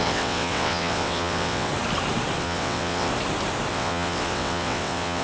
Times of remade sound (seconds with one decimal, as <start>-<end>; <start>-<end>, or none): 0.0-1.7; 2.4-3.1; 3.7-5.2